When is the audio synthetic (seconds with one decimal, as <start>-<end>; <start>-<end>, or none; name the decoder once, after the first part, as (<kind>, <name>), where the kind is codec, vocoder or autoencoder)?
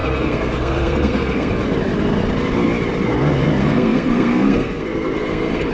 0.0-1.5 (codec, SNAC); 3.6-5.7